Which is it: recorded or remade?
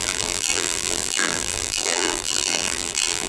remade